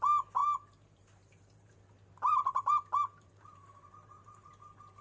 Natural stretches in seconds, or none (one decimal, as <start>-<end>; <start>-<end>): 0.0-0.4; 1.7-2.3; 4.5-5.0